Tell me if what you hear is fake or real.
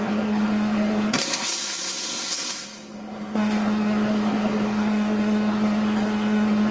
fake